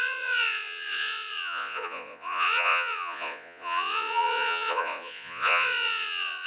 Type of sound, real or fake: fake